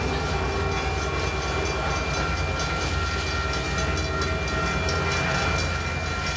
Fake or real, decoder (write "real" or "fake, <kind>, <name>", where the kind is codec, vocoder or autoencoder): real